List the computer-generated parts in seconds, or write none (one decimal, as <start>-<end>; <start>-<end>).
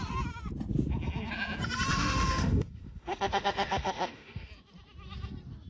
1.9-4.5